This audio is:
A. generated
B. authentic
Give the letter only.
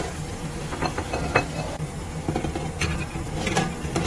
B